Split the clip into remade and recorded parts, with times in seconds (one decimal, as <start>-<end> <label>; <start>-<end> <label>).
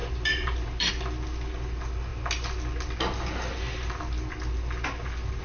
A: 0.0-0.9 remade; 0.9-5.4 recorded